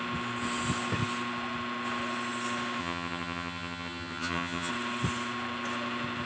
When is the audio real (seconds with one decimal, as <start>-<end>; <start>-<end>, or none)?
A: 0.0-2.8; 4.7-6.3